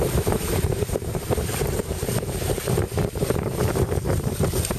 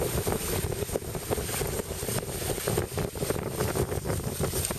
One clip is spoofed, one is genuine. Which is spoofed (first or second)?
first